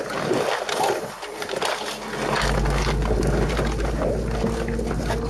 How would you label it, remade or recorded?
recorded